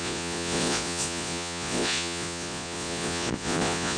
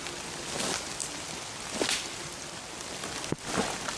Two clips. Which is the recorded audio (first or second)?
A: second